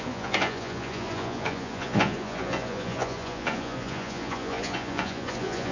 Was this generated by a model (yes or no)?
yes